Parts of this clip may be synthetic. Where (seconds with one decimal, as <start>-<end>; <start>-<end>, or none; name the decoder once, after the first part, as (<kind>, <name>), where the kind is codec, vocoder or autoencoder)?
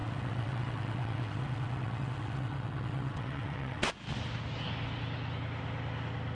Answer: 0.0-3.8 (vocoder, WaveNeXt)